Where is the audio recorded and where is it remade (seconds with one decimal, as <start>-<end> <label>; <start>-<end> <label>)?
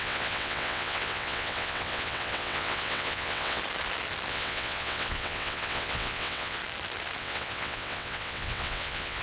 0.0-3.6 remade; 3.6-4.3 recorded; 4.3-6.6 remade; 6.6-7.2 recorded; 7.2-9.2 remade